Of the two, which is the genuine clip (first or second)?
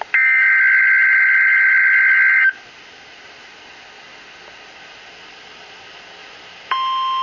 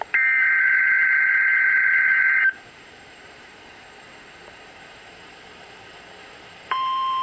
first